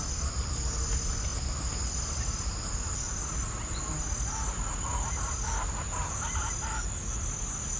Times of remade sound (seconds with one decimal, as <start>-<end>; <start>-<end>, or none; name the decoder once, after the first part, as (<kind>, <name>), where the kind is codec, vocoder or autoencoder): none